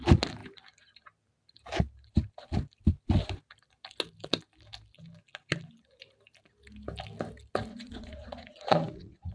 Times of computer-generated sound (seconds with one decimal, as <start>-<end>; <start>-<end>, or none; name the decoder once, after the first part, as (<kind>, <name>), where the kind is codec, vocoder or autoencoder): 7.7-9.3 (vocoder, Vocos)